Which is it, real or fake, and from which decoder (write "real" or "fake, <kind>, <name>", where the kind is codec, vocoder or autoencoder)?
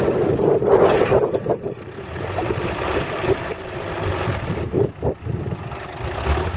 real